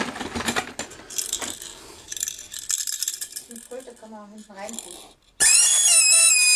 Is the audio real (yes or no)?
yes